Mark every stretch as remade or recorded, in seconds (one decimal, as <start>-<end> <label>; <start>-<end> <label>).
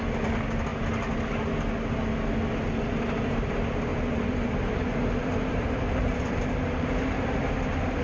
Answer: 0.0-3.9 recorded; 3.9-7.3 remade; 7.3-8.0 recorded